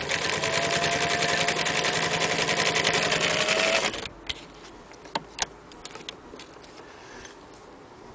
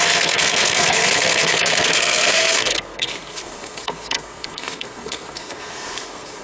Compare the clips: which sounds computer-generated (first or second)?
second